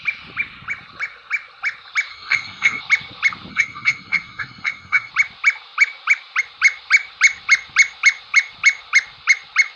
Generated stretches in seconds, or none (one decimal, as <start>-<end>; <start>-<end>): 2.1-2.8; 3.5-5.1